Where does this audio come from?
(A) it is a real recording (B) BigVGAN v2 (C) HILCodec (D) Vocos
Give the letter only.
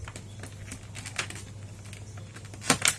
A